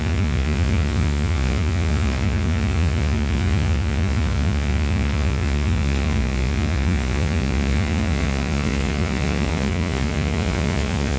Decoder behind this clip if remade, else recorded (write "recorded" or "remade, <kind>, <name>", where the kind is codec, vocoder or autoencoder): remade, vocoder, Vocos